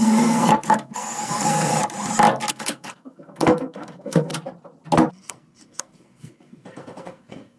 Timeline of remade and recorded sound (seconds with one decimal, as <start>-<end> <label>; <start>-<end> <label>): 0.0-1.7 remade; 1.7-2.5 recorded; 2.5-4.3 remade; 4.3-5.1 recorded; 5.1-7.6 remade